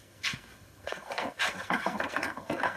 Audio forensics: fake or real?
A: fake